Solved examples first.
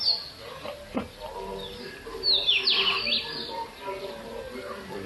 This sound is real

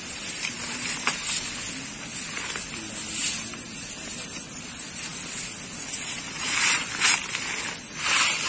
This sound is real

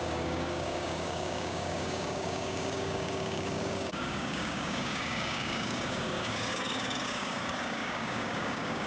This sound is fake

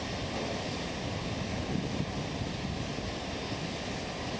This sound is real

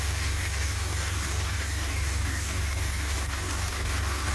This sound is fake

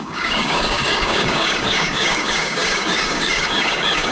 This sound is fake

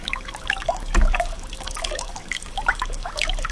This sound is fake